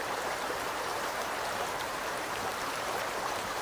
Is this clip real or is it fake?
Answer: fake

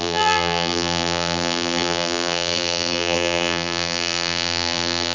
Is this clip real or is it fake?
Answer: fake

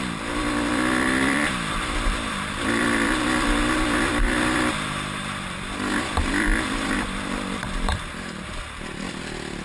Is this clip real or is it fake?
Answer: fake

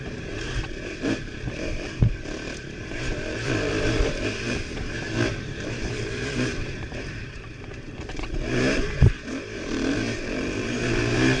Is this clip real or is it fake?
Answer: fake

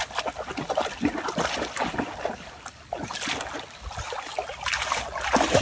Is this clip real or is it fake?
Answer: real